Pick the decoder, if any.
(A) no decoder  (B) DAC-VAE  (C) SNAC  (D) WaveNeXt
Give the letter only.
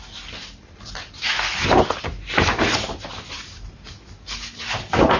A